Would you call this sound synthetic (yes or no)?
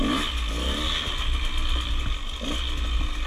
no